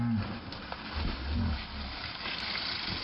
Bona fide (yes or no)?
yes